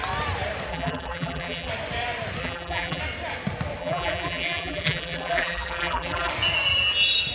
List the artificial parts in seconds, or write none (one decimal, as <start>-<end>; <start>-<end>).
0.7-1.7; 2.4-3.0; 3.8-6.3